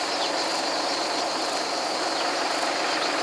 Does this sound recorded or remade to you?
recorded